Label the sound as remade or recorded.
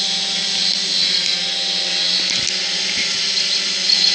recorded